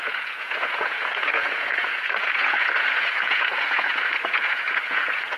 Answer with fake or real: fake